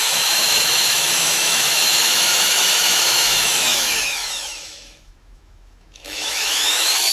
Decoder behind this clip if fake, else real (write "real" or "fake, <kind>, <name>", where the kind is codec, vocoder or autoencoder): fake, autoencoder, DAC-VAE